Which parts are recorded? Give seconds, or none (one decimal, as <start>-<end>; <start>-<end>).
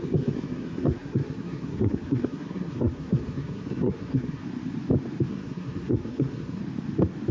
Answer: 4.4-5.3; 6.6-7.3